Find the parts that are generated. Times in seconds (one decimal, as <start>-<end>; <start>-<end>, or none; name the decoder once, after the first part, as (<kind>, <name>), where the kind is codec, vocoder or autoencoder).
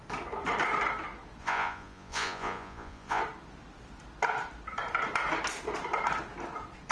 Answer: 1.4-3.2 (vocoder, Vocos)